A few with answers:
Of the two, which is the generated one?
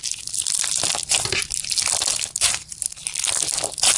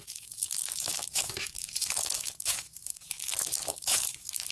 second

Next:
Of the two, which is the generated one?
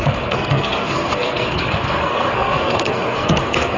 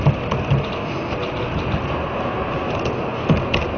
first